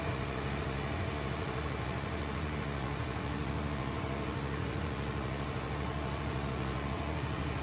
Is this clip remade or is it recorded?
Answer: remade